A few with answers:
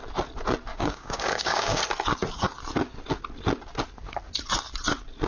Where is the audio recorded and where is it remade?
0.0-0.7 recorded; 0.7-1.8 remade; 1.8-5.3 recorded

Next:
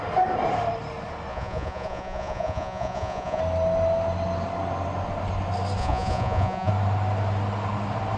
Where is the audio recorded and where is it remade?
0.0-1.3 recorded; 1.3-3.4 remade; 3.4-5.8 recorded; 5.8-6.7 remade; 6.7-8.2 recorded